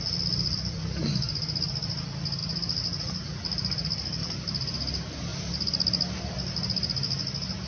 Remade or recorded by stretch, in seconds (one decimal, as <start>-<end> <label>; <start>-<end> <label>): 0.0-7.7 recorded